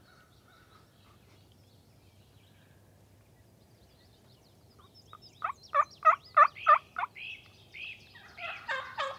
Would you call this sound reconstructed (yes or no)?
no